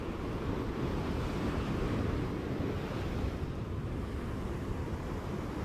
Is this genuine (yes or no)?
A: no